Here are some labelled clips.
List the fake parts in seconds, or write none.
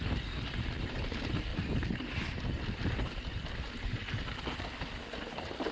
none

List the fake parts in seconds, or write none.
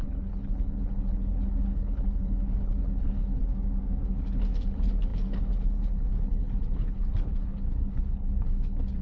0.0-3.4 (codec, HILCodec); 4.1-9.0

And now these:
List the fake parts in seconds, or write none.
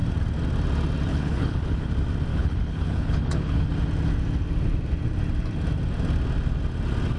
1.1-1.9 (codec, HILCodec); 2.3-3.7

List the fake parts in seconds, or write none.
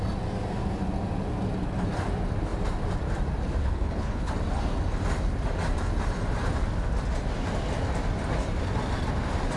3.6-4.3 (codec, HILCodec)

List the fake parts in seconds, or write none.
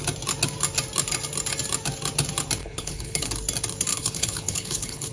2.6-3.3 (codec, HILCodec); 3.9-5.1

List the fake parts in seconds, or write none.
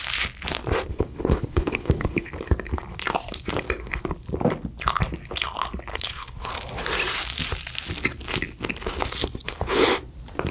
0.9-2.3 (codec, HILCodec); 5.9-6.5; 9.2-9.8